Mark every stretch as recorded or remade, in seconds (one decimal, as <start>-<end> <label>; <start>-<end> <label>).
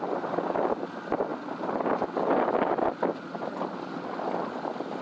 0.0-5.0 recorded